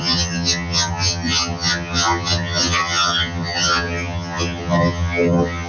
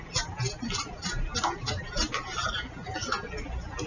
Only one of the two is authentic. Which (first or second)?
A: second